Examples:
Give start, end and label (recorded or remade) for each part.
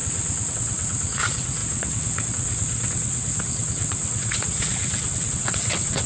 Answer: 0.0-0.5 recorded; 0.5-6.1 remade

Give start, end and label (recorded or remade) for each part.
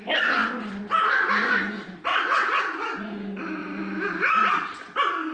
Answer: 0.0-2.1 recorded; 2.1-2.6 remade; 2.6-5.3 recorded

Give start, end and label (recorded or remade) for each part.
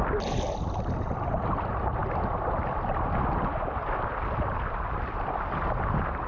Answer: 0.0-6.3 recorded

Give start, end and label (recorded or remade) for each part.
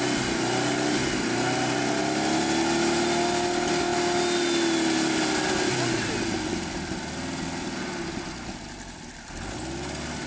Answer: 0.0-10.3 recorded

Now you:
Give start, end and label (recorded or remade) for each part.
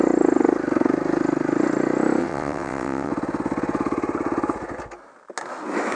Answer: 0.0-2.2 recorded; 2.2-3.1 remade; 3.1-5.9 recorded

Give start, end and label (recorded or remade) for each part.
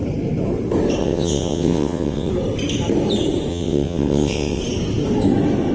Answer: 0.0-1.0 recorded; 1.0-2.3 remade; 2.3-3.5 recorded; 3.5-4.6 remade; 4.6-5.7 recorded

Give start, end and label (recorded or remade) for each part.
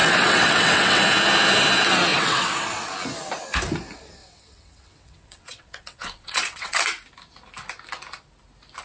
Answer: 0.0-1.0 remade; 1.0-2.1 recorded; 2.1-2.9 remade; 2.9-4.2 recorded; 4.2-6.8 remade; 6.8-8.8 recorded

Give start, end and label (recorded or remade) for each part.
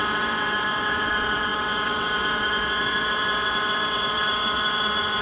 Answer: 0.0-5.2 remade